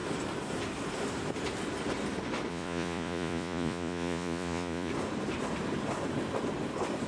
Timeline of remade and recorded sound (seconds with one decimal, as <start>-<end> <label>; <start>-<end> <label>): 0.0-2.5 recorded; 2.5-4.9 remade; 4.9-7.1 recorded